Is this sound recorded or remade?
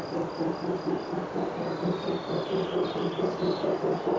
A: recorded